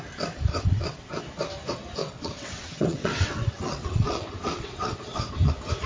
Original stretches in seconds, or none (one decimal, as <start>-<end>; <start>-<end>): 0.0-0.5; 1.2-2.0; 5.5-5.9